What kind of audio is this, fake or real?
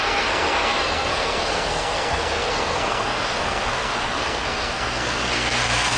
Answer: fake